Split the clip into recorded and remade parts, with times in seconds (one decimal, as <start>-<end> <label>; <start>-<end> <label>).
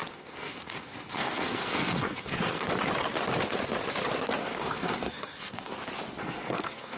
0.0-2.7 remade; 2.7-4.4 recorded; 4.4-5.8 remade; 5.8-6.2 recorded; 6.2-7.0 remade